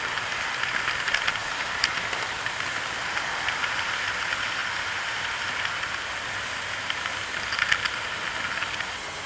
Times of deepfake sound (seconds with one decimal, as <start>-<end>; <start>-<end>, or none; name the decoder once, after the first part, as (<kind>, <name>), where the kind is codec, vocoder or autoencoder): 1.4-4.1 (vocoder, BigVGAN v2)